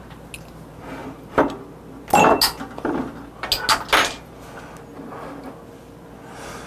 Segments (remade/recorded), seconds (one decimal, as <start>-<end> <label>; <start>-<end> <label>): 0.0-6.7 recorded